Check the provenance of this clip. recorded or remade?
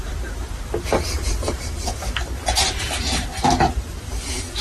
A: remade